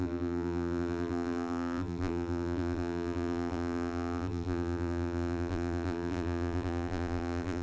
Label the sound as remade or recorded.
remade